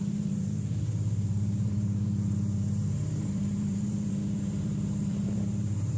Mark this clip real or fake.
fake